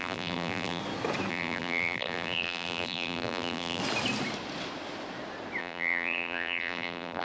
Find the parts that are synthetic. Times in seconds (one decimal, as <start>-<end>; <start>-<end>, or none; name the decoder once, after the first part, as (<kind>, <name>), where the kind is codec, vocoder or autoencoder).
0.0-0.8 (vocoder, BigVGAN v2); 1.3-3.8; 5.6-7.2